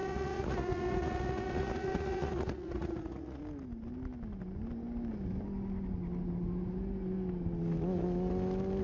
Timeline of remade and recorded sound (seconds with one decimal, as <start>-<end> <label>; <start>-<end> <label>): 0.0-3.4 remade; 3.4-8.8 recorded